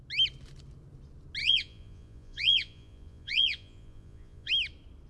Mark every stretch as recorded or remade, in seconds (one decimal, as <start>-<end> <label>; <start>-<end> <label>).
0.0-1.4 recorded; 1.4-4.5 remade; 4.5-5.1 recorded